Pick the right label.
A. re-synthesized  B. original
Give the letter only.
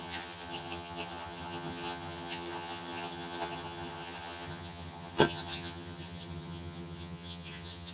A